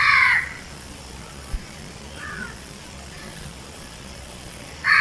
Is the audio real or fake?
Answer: fake